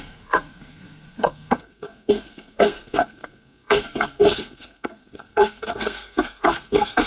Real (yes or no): no